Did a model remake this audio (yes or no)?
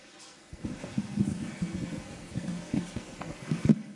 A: yes